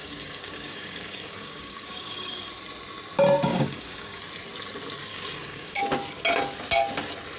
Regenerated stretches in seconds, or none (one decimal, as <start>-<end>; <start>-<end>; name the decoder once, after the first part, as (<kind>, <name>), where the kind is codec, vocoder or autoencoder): 0.0-2.5 (codec, DAC); 3.5-4.2; 5.1-5.8